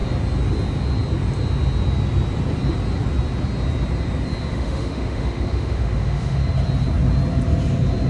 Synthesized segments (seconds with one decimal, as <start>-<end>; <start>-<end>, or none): 4.5-6.4